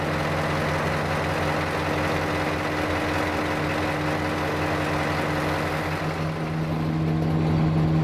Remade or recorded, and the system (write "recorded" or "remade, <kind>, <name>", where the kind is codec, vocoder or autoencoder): recorded